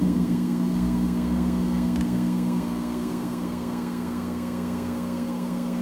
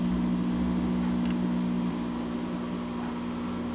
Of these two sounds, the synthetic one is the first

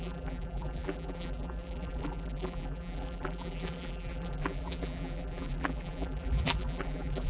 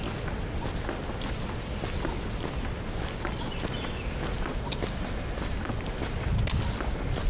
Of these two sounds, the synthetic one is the first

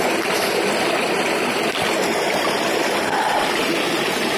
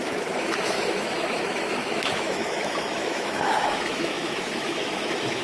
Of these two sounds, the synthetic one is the second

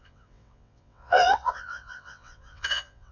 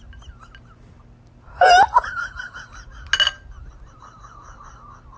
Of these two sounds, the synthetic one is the first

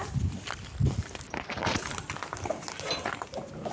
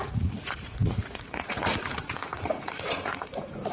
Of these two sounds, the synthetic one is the second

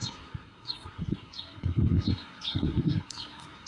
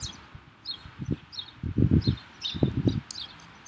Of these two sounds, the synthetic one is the first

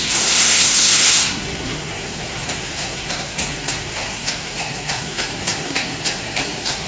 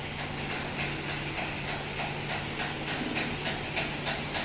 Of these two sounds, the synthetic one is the first